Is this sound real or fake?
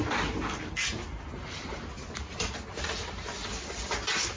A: real